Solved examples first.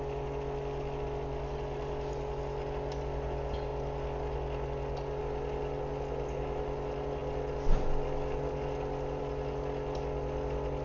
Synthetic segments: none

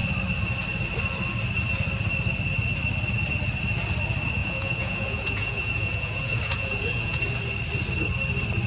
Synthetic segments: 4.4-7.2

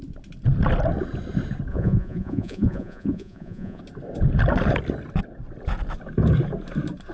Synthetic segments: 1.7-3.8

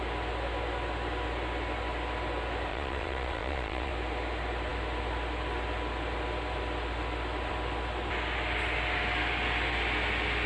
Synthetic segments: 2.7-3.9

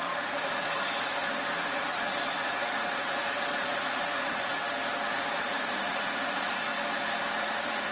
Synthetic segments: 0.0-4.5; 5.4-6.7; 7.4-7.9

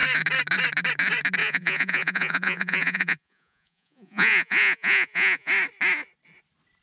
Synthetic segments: 1.4-5.5

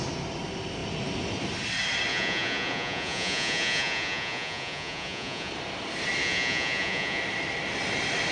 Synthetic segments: 2.1-5.5; 6.2-7.2

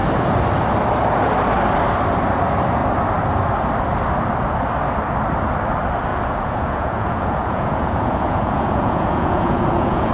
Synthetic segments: 6.1-10.1